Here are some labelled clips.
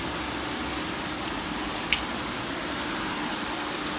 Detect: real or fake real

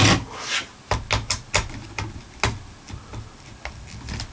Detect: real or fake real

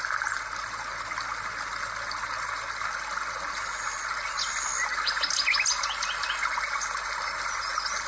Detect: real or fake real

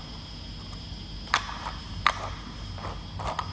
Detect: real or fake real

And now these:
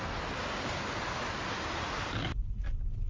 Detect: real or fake real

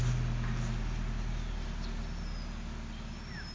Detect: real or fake real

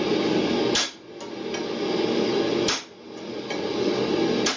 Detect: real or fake real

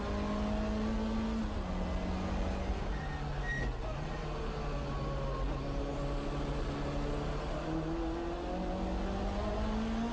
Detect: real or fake real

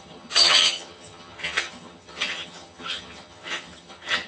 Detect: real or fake fake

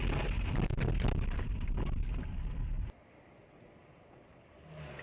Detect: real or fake real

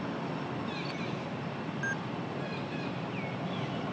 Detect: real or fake real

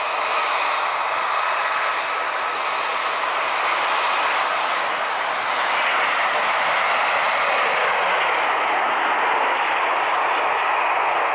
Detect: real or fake real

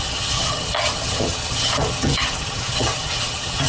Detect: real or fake fake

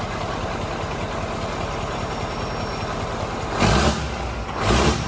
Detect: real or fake real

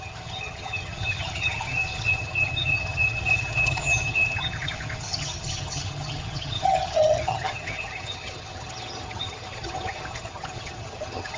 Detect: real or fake fake